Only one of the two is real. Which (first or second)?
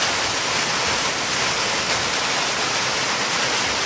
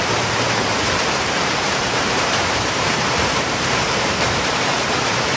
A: first